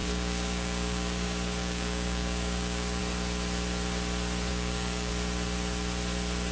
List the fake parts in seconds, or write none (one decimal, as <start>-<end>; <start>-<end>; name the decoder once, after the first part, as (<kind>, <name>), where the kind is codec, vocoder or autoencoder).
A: 0.0-3.0 (codec, DAC); 4.5-5.1